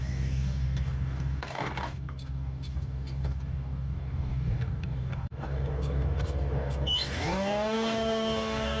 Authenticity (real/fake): fake